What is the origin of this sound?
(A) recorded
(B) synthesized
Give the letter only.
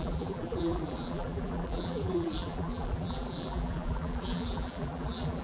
B